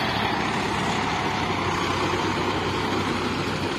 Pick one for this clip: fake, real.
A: real